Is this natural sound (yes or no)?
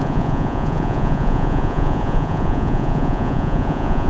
no